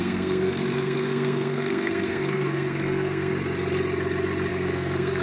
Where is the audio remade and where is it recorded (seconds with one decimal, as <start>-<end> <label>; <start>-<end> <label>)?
0.0-3.3 remade; 3.3-4.5 recorded; 4.5-5.2 remade